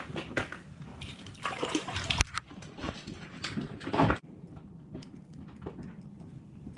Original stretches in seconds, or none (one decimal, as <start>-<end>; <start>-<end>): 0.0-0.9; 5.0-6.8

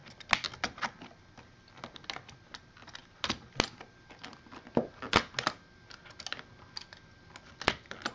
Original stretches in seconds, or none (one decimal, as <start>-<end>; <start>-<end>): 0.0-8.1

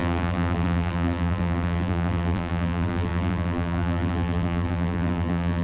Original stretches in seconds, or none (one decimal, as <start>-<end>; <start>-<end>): none